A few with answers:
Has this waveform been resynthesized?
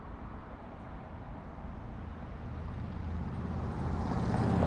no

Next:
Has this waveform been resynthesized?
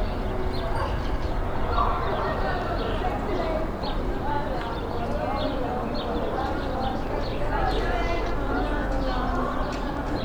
no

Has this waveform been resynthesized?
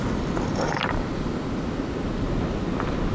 no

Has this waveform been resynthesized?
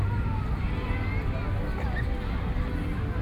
no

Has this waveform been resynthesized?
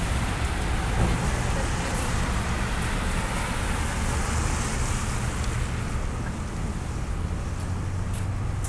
no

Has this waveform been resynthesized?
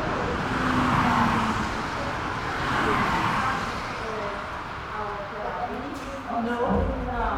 no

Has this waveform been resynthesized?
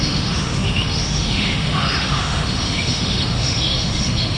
yes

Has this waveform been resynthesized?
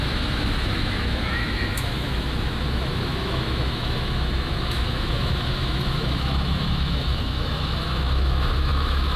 yes